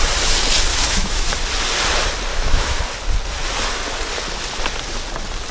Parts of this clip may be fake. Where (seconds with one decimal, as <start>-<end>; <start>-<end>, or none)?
0.7-1.3; 2.3-2.8